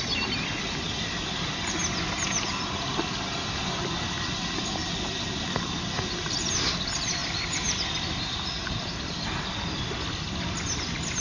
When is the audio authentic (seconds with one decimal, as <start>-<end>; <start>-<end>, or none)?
0.0-7.2; 7.8-11.2